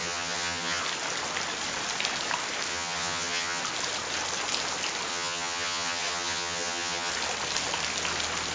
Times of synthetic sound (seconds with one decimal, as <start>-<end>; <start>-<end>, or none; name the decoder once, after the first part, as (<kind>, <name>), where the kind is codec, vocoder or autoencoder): 0.0-0.8 (vocoder, HiFi-GAN); 2.7-3.6; 5.1-7.1